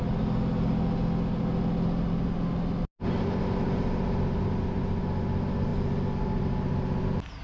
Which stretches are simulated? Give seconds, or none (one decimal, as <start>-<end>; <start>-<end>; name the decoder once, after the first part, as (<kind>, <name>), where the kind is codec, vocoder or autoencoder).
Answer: none